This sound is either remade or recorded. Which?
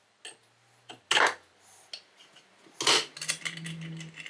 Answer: recorded